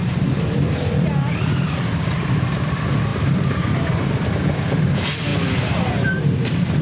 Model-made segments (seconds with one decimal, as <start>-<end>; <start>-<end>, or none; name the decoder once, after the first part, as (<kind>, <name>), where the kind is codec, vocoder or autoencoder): 0.0-0.9 (vocoder, BigVGAN v2); 3.1-4.1